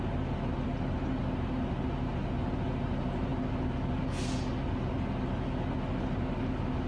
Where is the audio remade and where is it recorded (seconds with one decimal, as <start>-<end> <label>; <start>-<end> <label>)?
0.0-6.9 recorded